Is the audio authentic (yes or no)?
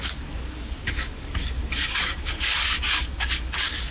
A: no